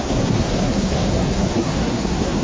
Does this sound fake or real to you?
fake